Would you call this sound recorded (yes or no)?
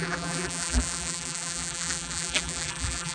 no